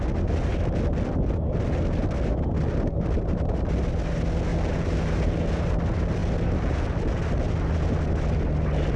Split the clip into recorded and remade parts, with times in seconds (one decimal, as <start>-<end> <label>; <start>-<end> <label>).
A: 0.0-4.5 recorded; 4.5-5.3 remade; 5.3-9.0 recorded